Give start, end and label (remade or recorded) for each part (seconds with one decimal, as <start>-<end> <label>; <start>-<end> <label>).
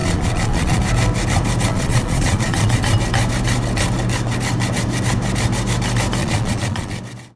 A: 0.0-0.8 remade; 0.8-1.7 recorded; 1.7-2.8 remade; 2.8-6.2 recorded; 6.2-7.0 remade; 7.0-7.4 recorded